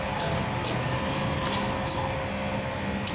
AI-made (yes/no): no